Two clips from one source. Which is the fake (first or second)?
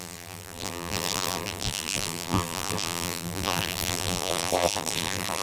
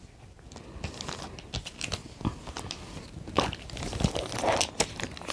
first